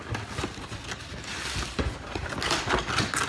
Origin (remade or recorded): recorded